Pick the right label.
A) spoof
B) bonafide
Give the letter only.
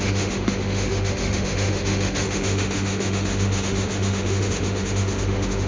A